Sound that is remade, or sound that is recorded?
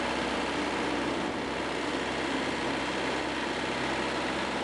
recorded